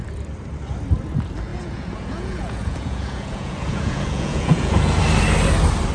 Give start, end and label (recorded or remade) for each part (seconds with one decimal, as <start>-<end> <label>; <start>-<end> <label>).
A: 0.0-1.5 recorded; 1.5-5.0 remade; 5.0-5.9 recorded

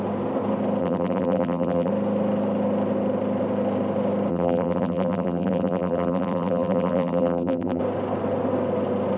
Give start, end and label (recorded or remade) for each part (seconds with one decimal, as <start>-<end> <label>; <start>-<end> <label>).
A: 0.0-0.8 recorded; 0.8-1.9 remade; 1.9-4.3 recorded; 4.3-7.8 remade; 7.8-9.2 recorded

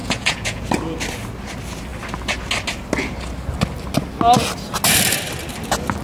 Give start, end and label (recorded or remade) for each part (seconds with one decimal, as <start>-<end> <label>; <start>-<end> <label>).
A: 0.0-0.6 remade; 0.6-6.0 recorded